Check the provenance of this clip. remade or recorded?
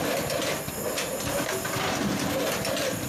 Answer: recorded